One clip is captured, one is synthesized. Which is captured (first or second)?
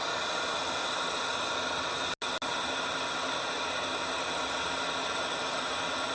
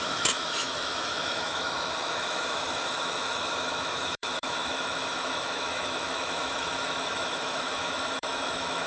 first